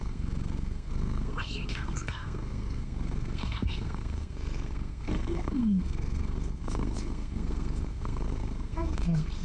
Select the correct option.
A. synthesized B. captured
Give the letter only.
A